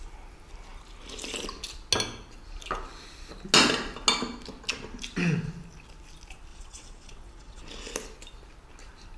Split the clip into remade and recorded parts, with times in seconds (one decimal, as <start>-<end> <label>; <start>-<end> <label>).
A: 0.0-6.5 recorded; 6.5-7.6 remade; 7.6-9.2 recorded